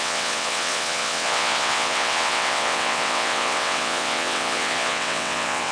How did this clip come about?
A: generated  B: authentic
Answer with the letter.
A